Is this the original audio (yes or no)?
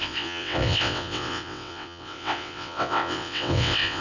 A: no